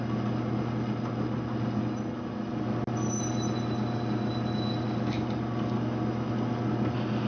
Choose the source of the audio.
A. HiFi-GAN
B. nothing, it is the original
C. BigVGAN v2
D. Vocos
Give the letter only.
B